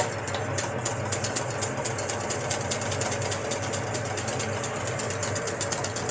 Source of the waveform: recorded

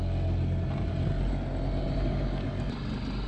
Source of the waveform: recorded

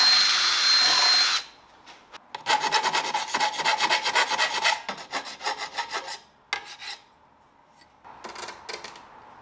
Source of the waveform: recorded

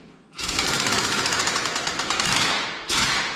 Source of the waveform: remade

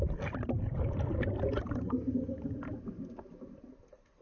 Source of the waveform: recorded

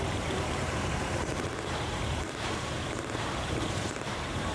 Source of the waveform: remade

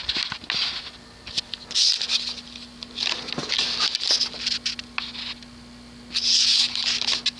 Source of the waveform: recorded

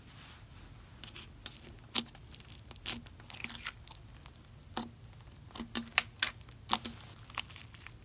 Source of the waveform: recorded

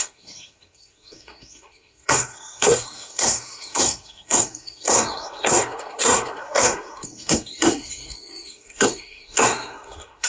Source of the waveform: remade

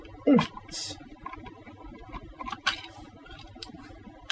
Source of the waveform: remade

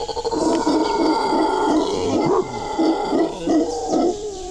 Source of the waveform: remade